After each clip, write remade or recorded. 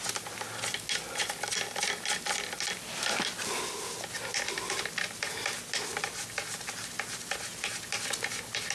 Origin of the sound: recorded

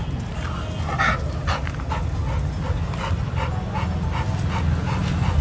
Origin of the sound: recorded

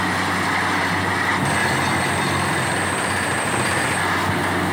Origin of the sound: recorded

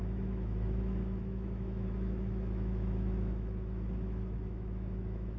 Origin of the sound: remade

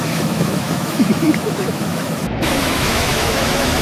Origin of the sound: remade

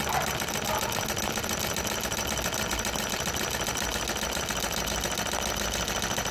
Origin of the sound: recorded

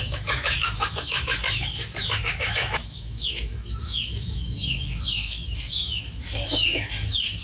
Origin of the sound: remade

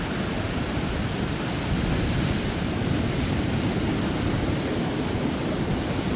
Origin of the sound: recorded